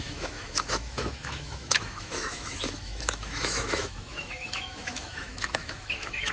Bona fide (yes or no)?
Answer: no